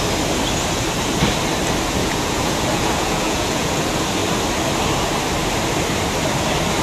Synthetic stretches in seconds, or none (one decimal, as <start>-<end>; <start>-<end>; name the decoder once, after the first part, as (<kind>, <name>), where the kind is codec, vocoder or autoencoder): 2.0-3.8 (vocoder, Vocos)